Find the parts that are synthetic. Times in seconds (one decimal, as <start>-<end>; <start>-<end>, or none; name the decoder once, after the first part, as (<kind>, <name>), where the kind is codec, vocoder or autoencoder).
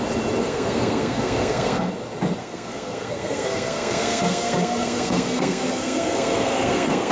0.4-1.9 (codec, SNAC); 2.4-7.1